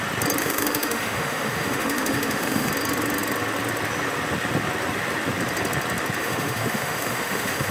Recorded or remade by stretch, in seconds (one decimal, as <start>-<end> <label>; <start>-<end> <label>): 0.0-0.4 recorded; 0.4-2.7 remade; 2.7-6.2 recorded; 6.2-7.7 remade